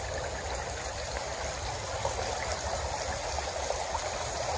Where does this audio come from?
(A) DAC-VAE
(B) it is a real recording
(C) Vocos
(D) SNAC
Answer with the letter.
B